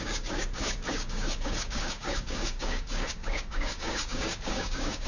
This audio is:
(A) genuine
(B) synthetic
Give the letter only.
B